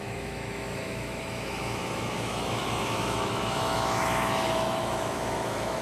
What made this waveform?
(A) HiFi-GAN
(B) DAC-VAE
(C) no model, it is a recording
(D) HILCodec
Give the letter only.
B